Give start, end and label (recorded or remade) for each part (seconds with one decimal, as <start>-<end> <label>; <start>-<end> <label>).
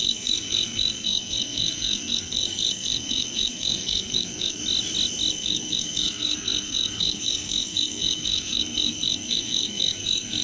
0.0-4.6 remade; 4.6-5.3 recorded; 5.3-10.4 remade